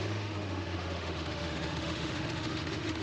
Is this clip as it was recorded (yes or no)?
no